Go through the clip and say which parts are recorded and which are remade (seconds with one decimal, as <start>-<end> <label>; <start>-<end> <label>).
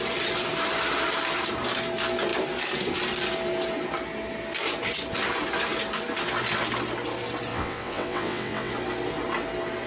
0.0-7.5 recorded; 7.5-8.7 remade; 8.7-9.9 recorded